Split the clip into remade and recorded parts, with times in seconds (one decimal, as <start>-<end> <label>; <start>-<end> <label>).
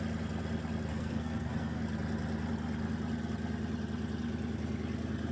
0.0-0.9 recorded; 0.9-1.8 remade; 1.8-5.3 recorded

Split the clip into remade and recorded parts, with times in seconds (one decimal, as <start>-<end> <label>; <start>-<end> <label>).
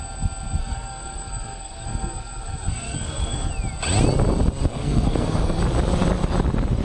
0.0-0.6 recorded; 0.6-3.5 remade; 3.5-4.7 recorded; 4.7-5.6 remade; 5.6-6.8 recorded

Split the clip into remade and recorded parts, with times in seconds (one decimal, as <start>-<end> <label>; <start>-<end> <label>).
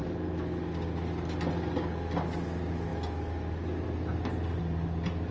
0.0-5.3 recorded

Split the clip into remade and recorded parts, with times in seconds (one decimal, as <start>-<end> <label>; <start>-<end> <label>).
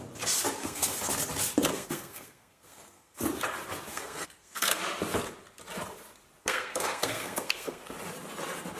0.0-0.6 recorded; 0.6-1.1 remade; 1.1-1.7 recorded; 1.7-3.2 remade; 3.2-3.9 recorded; 3.9-4.8 remade; 4.8-6.4 recorded; 6.4-7.9 remade; 7.9-8.8 recorded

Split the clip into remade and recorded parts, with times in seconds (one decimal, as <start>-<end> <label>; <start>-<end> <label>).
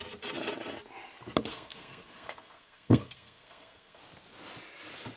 0.0-1.5 recorded; 1.5-4.0 remade; 4.0-5.2 recorded